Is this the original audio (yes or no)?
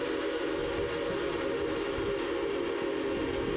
yes